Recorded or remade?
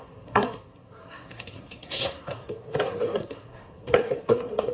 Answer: remade